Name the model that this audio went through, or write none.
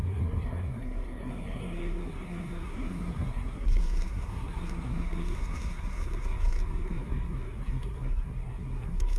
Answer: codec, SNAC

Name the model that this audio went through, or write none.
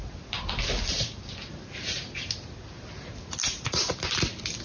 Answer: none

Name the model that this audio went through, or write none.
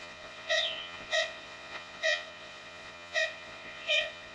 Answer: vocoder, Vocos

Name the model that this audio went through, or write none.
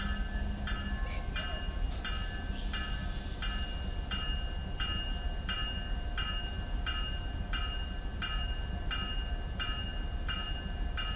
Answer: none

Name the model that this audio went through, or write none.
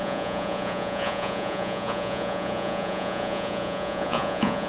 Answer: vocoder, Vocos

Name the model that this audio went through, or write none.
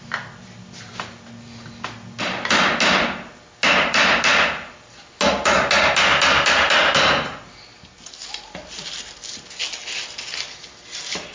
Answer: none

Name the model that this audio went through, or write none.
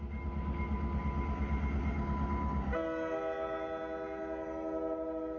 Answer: none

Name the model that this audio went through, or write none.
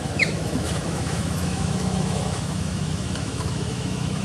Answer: autoencoder, DAC-VAE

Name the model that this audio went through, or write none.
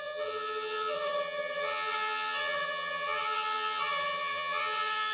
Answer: vocoder, HiFi-GAN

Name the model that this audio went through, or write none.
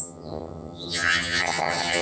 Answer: vocoder, HiFi-GAN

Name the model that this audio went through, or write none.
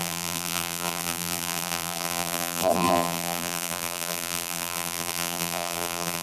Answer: vocoder, BigVGAN v2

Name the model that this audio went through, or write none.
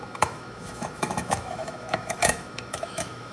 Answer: autoencoder, DAC-VAE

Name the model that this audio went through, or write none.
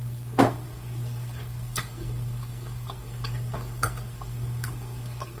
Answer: codec, SNAC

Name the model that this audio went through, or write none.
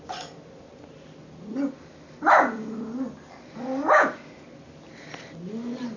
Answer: none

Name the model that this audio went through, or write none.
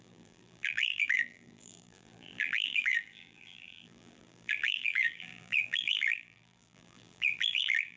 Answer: vocoder, BigVGAN v2